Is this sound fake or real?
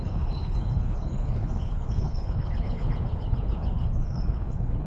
fake